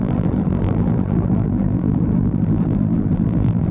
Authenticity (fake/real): fake